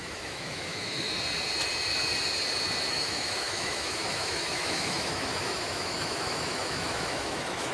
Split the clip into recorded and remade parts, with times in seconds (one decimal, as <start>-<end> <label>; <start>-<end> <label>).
0.0-1.1 remade; 1.1-2.9 recorded; 2.9-7.7 remade